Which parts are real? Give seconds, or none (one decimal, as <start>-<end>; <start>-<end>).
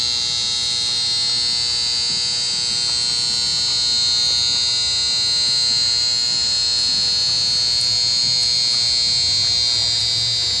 0.0-10.6